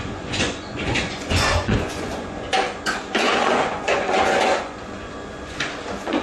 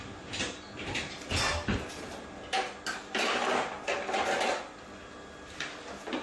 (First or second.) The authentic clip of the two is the second